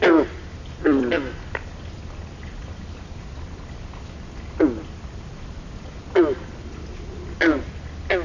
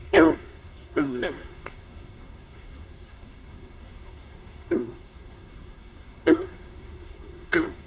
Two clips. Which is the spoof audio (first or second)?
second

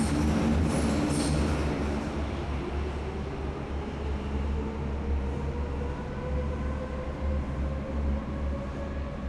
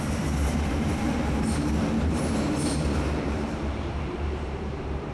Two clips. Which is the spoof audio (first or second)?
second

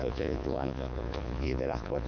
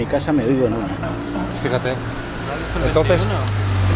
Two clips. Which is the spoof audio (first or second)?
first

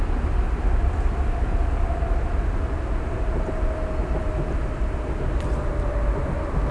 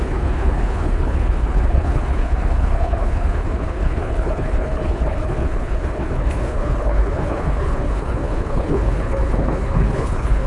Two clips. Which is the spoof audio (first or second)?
second